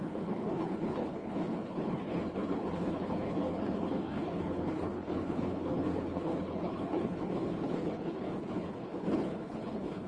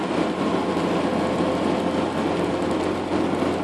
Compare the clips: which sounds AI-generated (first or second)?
first